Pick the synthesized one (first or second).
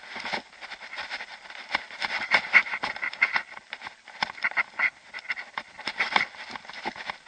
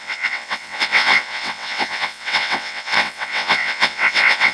second